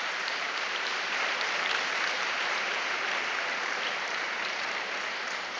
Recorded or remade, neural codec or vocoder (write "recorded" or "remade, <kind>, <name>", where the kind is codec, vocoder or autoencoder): remade, vocoder, BigVGAN v2